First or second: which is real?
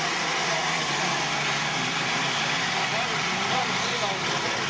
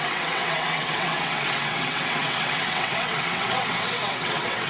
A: first